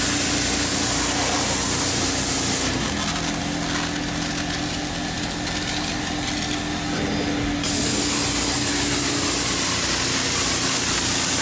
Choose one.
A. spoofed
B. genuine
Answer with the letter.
B